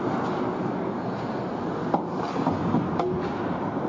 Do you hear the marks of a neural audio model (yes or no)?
no